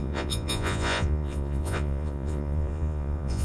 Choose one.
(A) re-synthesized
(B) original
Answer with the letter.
A